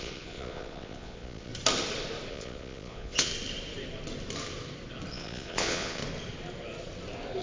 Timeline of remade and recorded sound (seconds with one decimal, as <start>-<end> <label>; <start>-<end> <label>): 0.0-1.5 remade; 1.5-2.3 recorded; 2.3-3.3 remade; 3.3-5.1 recorded; 5.1-6.0 remade; 6.0-7.4 recorded